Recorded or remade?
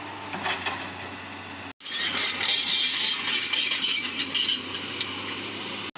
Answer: recorded